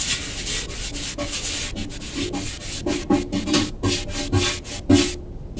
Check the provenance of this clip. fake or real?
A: real